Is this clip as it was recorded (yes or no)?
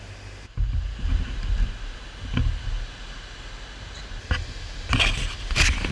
yes